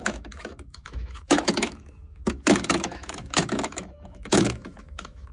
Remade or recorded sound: remade